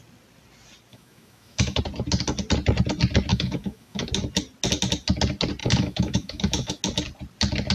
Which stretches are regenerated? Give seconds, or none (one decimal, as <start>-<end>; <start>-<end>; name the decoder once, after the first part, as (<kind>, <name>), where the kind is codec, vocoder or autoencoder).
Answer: 0.9-1.8 (autoencoder, DAC-VAE); 3.3-4.1; 5.6-6.8